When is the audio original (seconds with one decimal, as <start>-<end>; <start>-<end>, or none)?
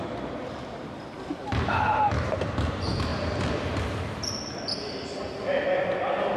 0.0-3.1; 3.8-6.4